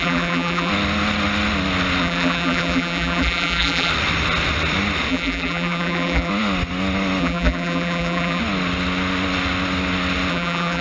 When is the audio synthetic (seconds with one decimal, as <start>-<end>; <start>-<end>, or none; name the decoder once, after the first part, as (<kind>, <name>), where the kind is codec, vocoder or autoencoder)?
0.0-0.7 (vocoder, BigVGAN v2); 2.0-3.9; 5.1-6.3; 7.2-8.4; 10.3-10.8